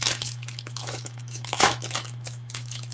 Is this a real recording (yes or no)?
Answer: no